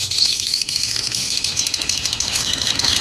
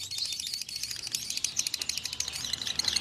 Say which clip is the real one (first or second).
second